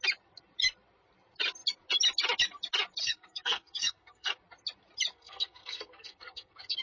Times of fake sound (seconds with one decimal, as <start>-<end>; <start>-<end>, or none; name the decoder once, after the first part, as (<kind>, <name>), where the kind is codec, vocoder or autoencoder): 3.0-4.3 (codec, SNAC); 5.1-6.8